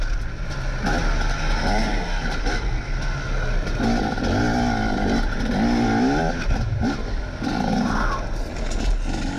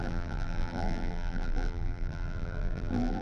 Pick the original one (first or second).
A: first